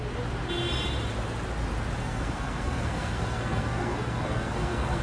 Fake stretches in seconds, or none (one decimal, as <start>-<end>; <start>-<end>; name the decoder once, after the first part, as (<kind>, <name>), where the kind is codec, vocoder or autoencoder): 2.0-5.0 (codec, SNAC)